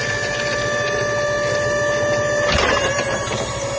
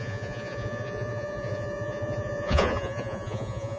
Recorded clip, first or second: first